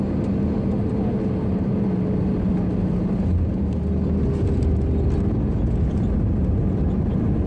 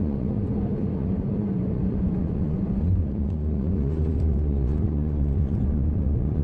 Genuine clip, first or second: first